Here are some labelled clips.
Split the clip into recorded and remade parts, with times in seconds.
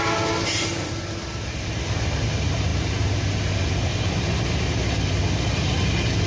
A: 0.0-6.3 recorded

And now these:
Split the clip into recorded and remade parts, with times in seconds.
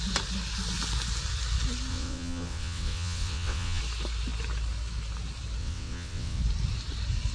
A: 0.0-1.9 recorded; 1.9-3.8 remade; 3.8-5.6 recorded; 5.6-6.4 remade; 6.4-7.3 recorded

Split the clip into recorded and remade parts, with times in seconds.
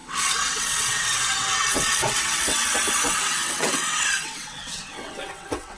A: 0.0-5.8 remade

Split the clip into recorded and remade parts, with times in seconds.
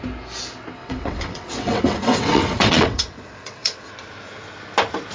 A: 0.0-0.8 recorded; 0.8-3.9 remade; 3.9-5.1 recorded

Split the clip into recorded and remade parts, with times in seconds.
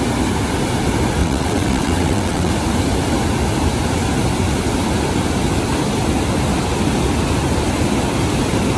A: 0.0-1.2 recorded; 1.2-2.5 remade; 2.5-8.8 recorded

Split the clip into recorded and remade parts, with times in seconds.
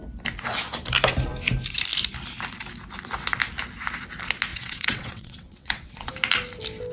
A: 0.0-4.5 recorded; 4.5-6.1 remade; 6.1-6.9 recorded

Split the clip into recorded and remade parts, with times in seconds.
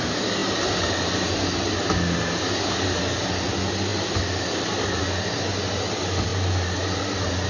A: 0.0-7.5 recorded